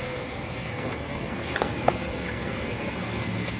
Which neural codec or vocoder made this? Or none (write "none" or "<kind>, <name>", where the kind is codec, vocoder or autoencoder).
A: codec, SNAC